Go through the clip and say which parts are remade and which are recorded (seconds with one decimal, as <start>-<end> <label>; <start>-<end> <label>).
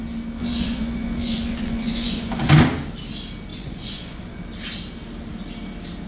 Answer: 0.0-0.4 recorded; 0.4-2.5 remade; 2.5-3.5 recorded; 3.5-4.4 remade; 4.4-6.1 recorded